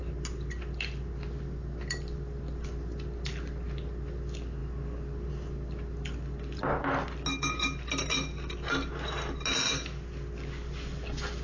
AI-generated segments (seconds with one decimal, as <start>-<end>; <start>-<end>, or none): none